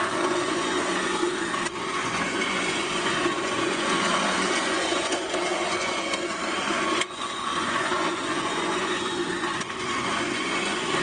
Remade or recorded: remade